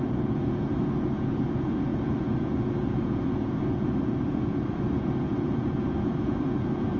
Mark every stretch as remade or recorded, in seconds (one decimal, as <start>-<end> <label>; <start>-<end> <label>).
0.0-7.0 remade